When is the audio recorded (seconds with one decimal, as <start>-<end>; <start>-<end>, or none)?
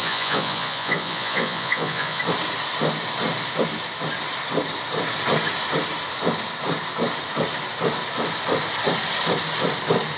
2.2-10.2